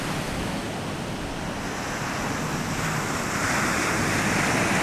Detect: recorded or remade recorded